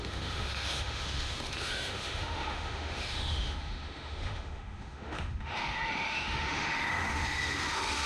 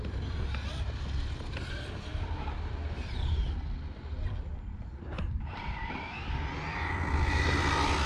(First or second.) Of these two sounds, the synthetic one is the first